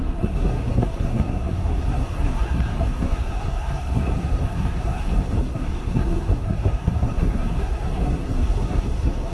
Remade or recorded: remade